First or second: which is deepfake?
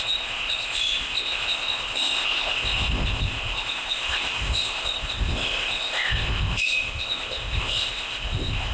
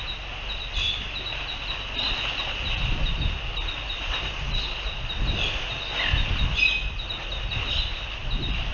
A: first